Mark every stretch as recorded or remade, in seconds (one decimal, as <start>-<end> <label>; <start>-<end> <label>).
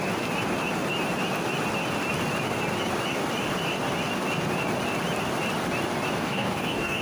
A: 0.0-6.2 recorded; 6.2-7.0 remade